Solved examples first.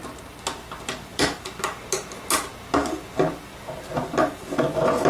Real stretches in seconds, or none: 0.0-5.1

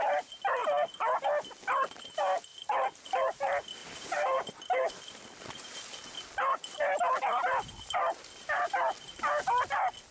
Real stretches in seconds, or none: 0.0-10.1

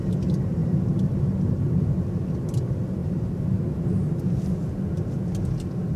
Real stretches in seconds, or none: 0.0-6.0

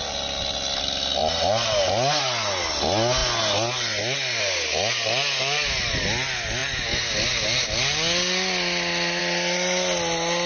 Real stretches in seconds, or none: 0.0-10.5